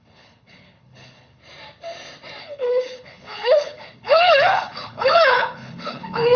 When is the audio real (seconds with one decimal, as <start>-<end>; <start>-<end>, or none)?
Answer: 1.4-2.4